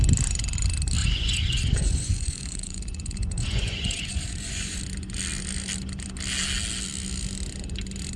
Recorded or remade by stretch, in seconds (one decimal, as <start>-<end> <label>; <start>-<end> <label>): 0.0-1.0 recorded; 1.0-4.8 remade; 4.8-8.2 recorded